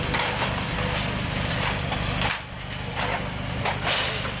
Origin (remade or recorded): recorded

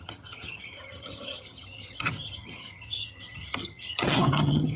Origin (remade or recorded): remade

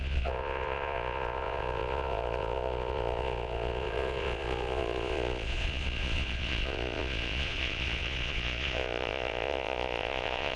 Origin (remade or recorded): remade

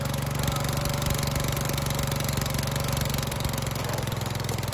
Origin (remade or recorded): recorded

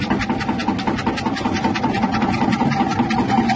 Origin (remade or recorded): recorded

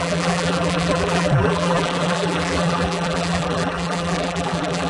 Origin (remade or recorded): remade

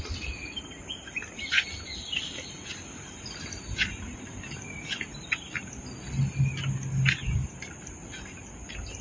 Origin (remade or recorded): recorded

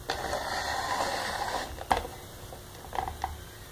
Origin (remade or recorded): recorded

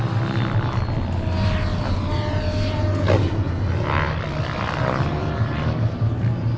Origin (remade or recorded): recorded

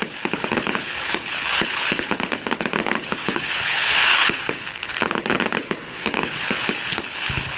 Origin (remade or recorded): remade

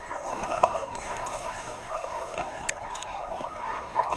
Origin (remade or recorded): remade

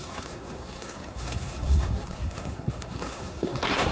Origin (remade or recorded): remade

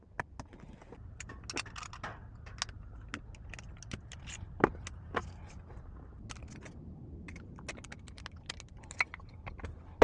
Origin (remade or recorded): recorded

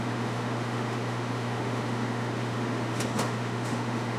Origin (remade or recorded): remade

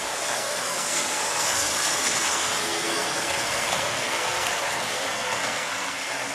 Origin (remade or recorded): remade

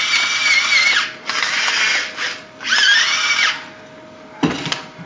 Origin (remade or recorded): recorded